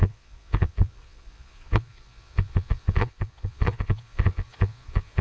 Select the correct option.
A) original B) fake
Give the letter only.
B